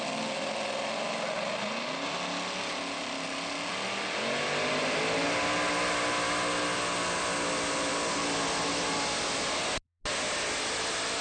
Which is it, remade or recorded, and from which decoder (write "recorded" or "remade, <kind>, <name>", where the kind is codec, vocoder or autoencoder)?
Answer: recorded